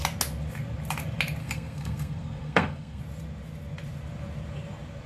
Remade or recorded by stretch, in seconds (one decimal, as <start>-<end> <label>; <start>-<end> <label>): 0.0-1.4 recorded; 1.4-3.0 remade; 3.0-5.1 recorded